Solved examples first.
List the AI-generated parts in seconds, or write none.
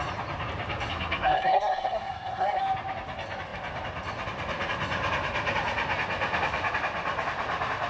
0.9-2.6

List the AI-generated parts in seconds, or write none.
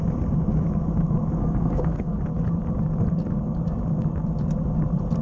1.4-2.2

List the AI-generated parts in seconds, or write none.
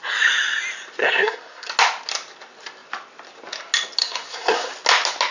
1.0-1.7; 4.0-4.7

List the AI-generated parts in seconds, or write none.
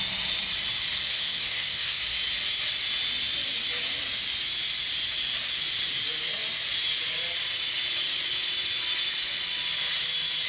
1.1-2.0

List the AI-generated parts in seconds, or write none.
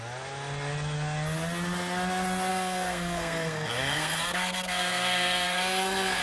2.5-6.2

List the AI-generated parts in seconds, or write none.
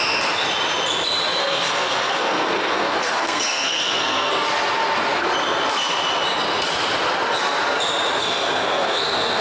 1.4-4.3; 8.2-9.4